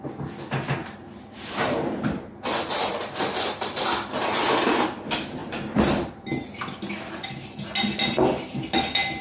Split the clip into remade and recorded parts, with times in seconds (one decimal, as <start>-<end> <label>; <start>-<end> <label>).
0.0-0.8 recorded; 0.8-2.3 remade; 2.3-5.4 recorded; 5.4-6.1 remade; 6.1-9.2 recorded